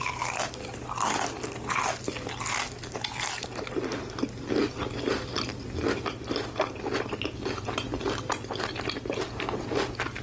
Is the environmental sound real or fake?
real